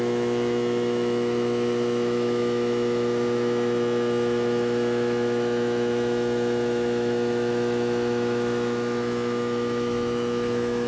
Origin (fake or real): fake